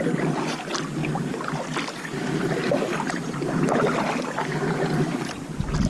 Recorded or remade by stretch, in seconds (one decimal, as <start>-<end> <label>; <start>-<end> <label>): 0.0-1.0 recorded; 1.0-1.9 remade; 1.9-2.4 recorded; 2.4-5.9 remade